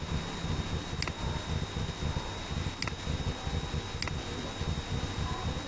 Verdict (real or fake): real